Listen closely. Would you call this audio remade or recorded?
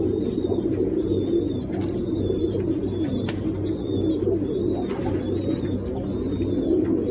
recorded